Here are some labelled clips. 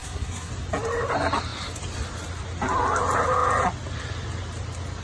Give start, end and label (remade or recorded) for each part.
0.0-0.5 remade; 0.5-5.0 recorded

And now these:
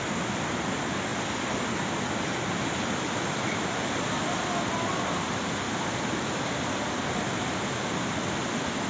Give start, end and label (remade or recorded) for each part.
0.0-8.9 recorded

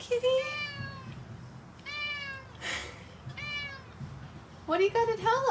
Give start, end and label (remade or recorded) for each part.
0.0-5.5 recorded

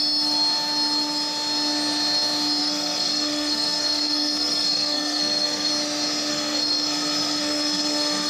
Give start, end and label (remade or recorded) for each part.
0.0-2.6 recorded; 2.6-5.7 remade; 5.7-6.3 recorded; 6.3-8.3 remade